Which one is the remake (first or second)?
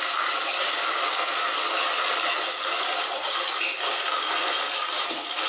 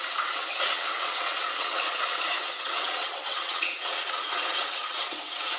second